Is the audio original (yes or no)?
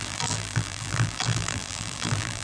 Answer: no